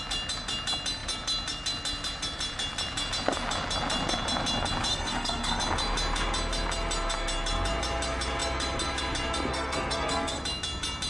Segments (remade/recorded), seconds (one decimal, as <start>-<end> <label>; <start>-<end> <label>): 0.0-4.9 recorded; 4.9-5.6 remade; 5.6-9.5 recorded; 9.5-10.4 remade; 10.4-11.1 recorded